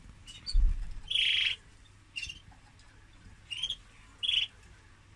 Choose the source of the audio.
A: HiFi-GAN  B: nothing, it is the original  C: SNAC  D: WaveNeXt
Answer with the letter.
B